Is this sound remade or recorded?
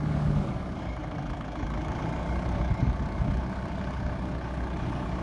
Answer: remade